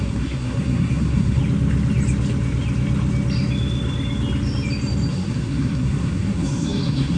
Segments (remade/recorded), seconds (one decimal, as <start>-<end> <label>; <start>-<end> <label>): 0.0-1.4 remade; 1.4-5.1 recorded; 5.1-7.2 remade